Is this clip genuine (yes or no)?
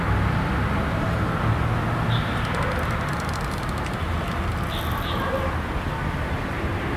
yes